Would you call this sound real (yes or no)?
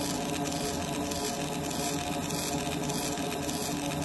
yes